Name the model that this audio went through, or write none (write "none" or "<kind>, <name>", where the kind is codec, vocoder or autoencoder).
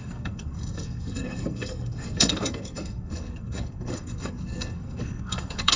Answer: codec, SNAC